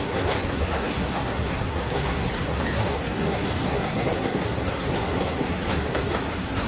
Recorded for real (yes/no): no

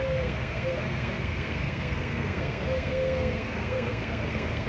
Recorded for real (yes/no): no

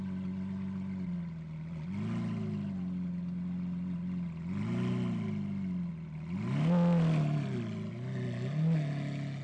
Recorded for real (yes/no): yes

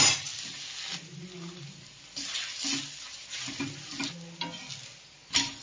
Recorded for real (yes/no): yes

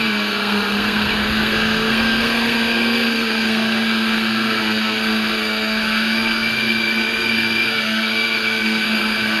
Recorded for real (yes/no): no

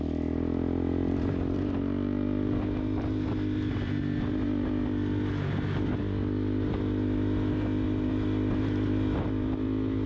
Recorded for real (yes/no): yes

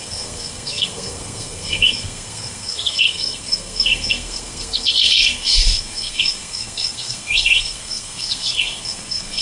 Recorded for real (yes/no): no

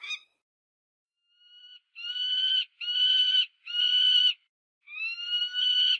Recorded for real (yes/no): yes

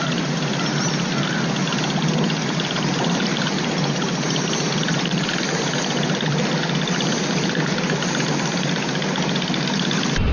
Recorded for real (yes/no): yes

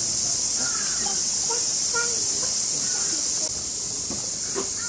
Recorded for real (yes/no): yes